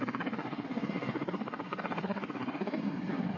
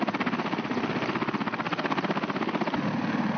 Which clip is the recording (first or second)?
second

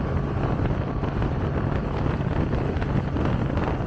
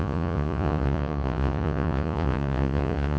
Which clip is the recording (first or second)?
first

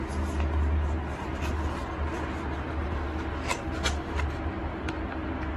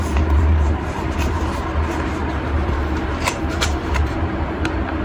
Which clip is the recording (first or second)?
first